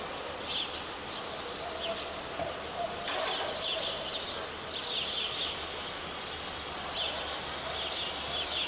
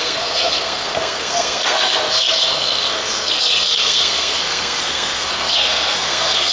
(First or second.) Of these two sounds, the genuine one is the first